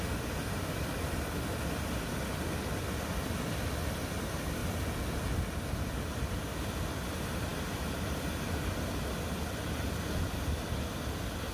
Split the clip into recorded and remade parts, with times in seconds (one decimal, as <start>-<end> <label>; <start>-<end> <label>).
0.0-11.5 recorded